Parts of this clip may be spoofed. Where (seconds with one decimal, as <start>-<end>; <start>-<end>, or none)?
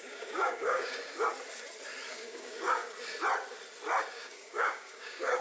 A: 0.0-1.0; 2.1-2.8; 4.1-5.4